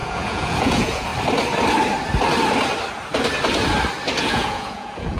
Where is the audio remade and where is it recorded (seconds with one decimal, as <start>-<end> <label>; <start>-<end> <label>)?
0.0-1.1 remade; 1.1-4.2 recorded; 4.2-5.2 remade